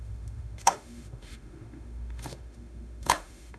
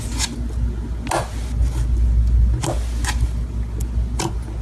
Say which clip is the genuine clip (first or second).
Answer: second